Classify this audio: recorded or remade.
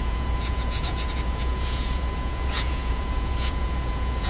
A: remade